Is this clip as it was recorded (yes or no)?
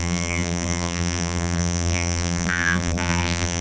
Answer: no